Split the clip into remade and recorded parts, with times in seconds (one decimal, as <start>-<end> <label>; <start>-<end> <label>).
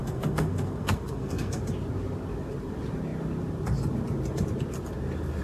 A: 0.0-1.6 remade; 1.6-5.4 recorded